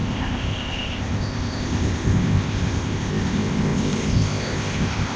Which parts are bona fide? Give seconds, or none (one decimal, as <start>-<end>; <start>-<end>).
none